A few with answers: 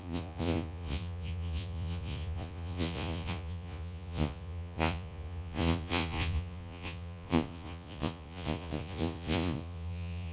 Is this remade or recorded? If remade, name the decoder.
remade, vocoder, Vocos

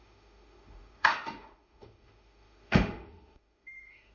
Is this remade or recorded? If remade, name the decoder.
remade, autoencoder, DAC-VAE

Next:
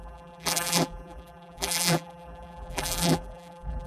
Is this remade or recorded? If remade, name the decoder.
remade, vocoder, BigVGAN v2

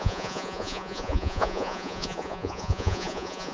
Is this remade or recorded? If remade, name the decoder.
remade, vocoder, Vocos